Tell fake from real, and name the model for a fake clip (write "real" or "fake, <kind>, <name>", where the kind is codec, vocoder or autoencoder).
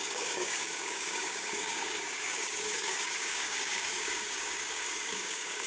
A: fake, codec, DAC